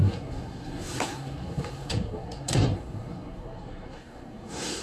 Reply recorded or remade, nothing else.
remade